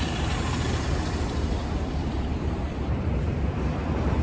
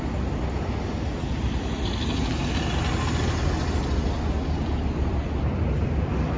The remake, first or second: first